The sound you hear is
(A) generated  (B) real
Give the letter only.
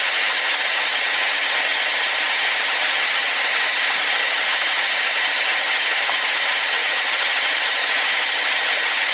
A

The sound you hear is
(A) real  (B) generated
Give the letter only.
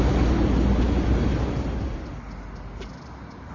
A